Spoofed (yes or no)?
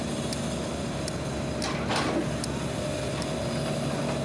no